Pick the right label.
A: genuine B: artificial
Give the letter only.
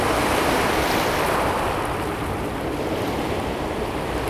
A